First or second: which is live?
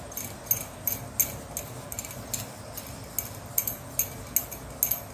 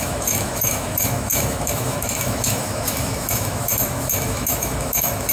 first